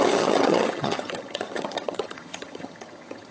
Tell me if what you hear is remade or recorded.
remade